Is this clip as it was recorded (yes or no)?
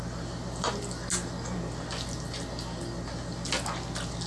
yes